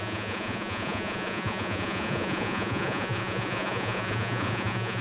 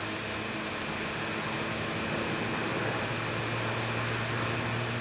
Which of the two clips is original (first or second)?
second